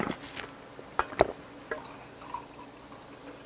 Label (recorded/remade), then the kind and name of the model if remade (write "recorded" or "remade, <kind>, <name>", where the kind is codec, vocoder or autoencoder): recorded